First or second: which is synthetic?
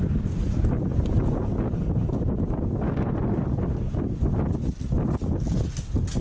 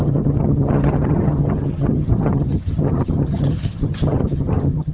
second